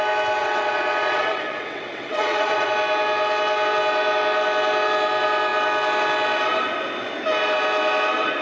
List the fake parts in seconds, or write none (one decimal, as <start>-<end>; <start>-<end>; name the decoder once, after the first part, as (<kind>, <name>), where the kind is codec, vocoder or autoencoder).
0.4-2.7 (vocoder, WaveNeXt)